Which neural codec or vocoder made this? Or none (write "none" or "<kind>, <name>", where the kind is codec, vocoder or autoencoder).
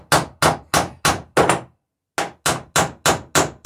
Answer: none